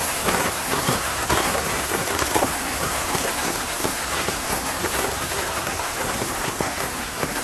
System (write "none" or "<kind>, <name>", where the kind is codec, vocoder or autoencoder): codec, SNAC